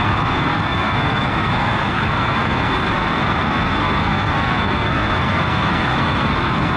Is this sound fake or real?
fake